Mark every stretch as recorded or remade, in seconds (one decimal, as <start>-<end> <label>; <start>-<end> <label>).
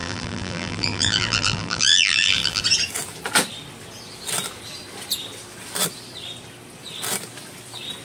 0.0-2.6 remade; 2.6-8.0 recorded